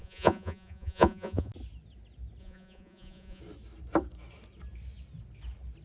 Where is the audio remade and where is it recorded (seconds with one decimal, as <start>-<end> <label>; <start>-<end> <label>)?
0.0-1.5 remade; 1.5-2.4 recorded; 2.4-3.4 remade; 3.4-5.8 recorded